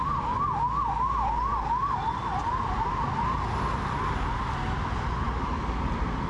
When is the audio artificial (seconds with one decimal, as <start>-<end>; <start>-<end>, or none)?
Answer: none